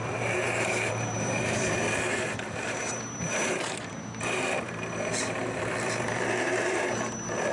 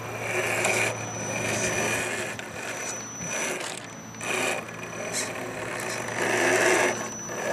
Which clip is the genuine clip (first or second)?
second